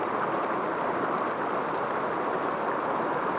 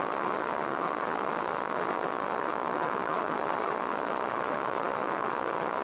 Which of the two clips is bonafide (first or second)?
first